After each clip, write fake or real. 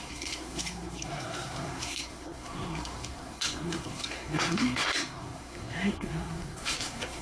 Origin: fake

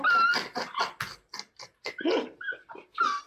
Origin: real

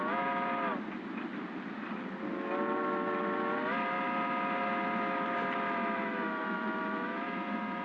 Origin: real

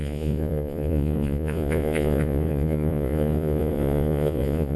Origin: fake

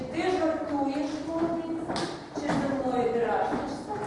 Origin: real